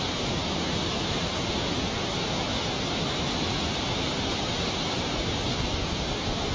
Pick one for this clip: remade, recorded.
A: recorded